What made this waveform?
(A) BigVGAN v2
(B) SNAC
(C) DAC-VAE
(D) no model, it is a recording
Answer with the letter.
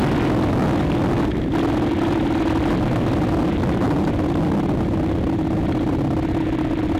D